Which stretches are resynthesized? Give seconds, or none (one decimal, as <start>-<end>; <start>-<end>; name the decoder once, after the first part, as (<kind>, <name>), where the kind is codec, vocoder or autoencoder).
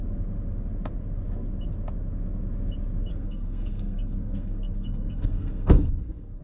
3.1-6.4 (codec, SNAC)